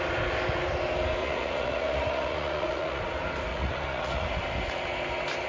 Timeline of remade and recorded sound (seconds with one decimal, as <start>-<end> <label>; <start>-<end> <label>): 0.0-1.2 recorded; 1.2-3.0 remade; 3.0-3.5 recorded; 3.5-4.3 remade; 4.3-5.5 recorded